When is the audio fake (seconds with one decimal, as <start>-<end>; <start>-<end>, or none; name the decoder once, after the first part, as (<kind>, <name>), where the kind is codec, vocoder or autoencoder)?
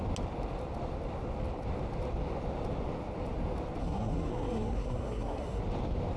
3.8-5.6 (codec, SNAC)